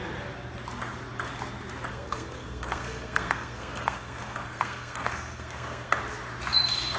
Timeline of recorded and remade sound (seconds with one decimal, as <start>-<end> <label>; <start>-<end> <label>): 0.0-1.9 recorded; 1.9-6.0 remade; 6.0-7.0 recorded